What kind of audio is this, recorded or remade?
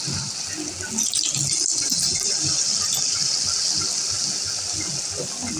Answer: recorded